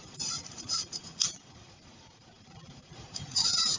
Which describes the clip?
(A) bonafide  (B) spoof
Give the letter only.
B